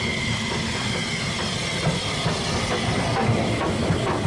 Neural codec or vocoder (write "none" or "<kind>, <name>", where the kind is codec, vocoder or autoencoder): none